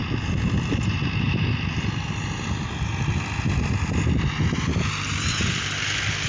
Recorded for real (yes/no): yes